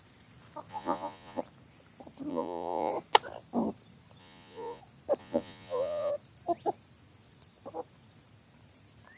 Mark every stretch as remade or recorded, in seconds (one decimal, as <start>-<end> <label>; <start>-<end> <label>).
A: 0.0-0.7 recorded; 0.7-1.4 remade; 1.4-2.3 recorded; 2.3-2.9 remade; 2.9-4.2 recorded; 4.2-4.8 remade; 4.8-5.2 recorded; 5.2-6.1 remade; 6.1-9.2 recorded